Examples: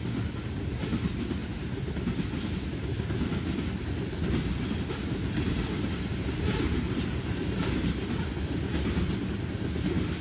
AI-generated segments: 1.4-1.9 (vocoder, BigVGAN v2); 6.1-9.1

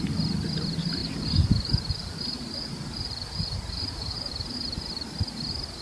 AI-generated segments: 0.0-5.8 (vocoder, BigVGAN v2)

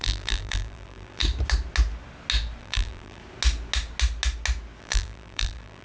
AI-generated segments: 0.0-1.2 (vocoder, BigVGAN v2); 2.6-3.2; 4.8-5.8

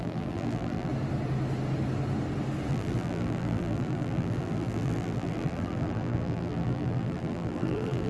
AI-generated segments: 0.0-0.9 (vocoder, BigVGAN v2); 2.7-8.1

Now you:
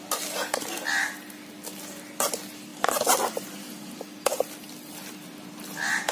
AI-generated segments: 2.7-3.5 (vocoder, BigVGAN v2)